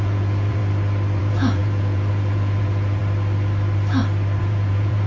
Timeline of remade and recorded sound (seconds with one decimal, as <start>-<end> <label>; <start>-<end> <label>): 0.0-0.6 remade; 0.6-1.2 recorded; 1.2-3.0 remade; 3.0-4.4 recorded; 4.4-5.1 remade

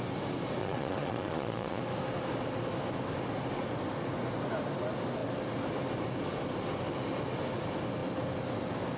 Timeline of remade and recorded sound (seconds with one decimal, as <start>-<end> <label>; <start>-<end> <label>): 0.0-0.6 recorded; 0.6-1.8 remade; 1.8-9.0 recorded

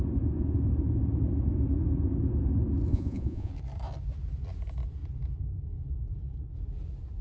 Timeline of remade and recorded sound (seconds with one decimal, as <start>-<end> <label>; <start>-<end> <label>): 0.0-2.9 recorded; 2.9-3.5 remade; 3.5-7.2 recorded